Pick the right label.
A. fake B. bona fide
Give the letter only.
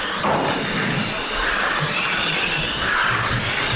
B